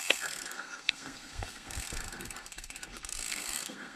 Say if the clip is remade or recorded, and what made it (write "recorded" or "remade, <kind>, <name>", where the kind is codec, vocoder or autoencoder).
remade, codec, SNAC